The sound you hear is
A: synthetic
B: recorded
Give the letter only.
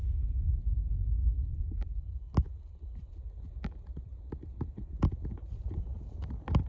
A